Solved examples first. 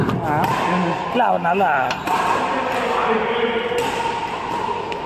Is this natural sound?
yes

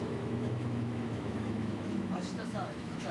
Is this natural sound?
no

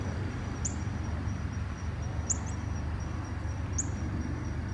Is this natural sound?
yes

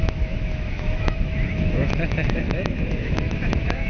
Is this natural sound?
no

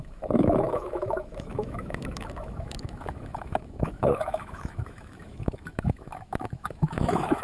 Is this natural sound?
no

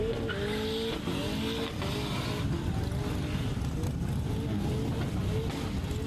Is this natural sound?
yes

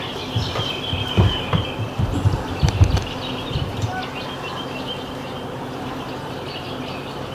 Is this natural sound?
yes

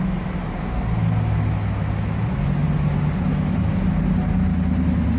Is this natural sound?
yes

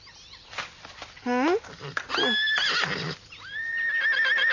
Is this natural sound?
yes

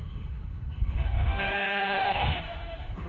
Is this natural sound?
no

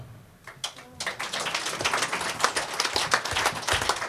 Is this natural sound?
yes